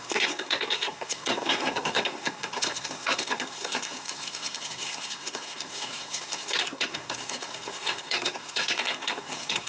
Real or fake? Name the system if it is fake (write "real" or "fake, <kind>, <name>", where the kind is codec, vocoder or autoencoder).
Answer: fake, codec, SNAC